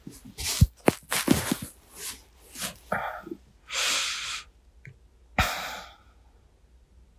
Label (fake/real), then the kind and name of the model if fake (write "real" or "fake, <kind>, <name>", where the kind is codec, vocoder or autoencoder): real